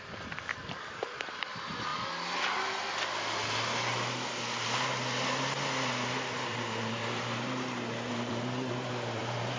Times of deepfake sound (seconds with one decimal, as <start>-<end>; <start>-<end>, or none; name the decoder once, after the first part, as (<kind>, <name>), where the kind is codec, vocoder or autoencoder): 0.0-1.9 (vocoder, BigVGAN v2); 5.9-9.6